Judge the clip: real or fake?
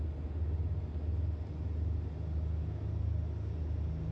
real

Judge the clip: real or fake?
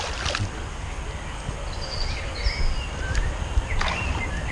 real